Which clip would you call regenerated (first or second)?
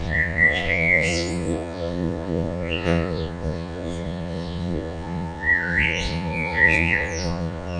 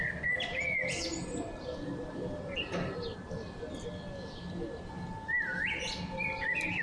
first